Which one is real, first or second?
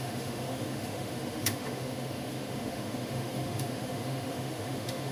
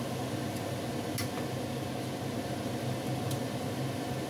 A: second